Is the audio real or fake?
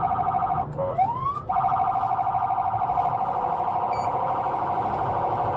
real